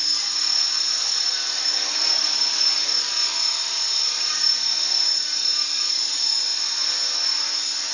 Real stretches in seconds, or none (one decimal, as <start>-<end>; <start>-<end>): 0.0-7.9